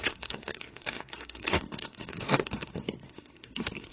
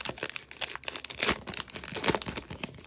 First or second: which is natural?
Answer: second